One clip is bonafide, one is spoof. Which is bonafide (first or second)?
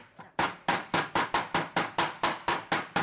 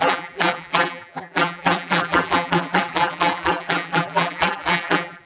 first